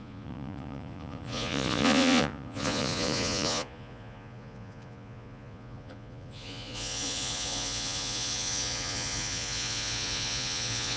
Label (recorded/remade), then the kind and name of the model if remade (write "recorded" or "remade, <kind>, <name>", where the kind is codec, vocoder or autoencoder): remade, vocoder, Vocos